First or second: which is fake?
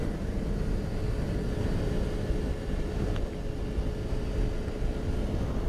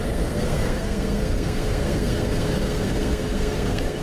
second